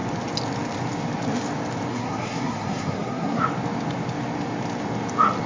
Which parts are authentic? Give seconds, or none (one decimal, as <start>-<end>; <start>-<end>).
0.0-1.9; 3.4-5.5